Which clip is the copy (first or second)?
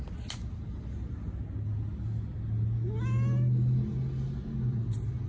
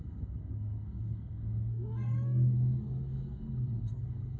second